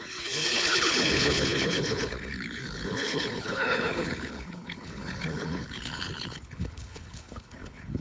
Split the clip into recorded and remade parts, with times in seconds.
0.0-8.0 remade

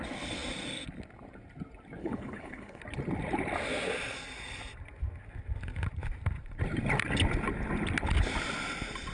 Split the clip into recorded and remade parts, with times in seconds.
0.0-2.0 recorded; 2.0-2.8 remade; 2.8-9.1 recorded

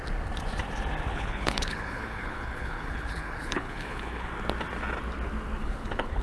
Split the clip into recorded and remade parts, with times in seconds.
0.0-1.1 recorded; 1.1-4.3 remade; 4.3-5.6 recorded; 5.6-6.2 remade